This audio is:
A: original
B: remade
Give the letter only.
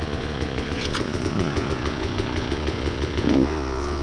B